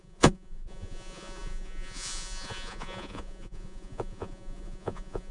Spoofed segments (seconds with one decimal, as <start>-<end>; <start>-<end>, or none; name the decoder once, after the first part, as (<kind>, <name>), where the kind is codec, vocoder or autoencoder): 0.0-5.3 (vocoder, Vocos)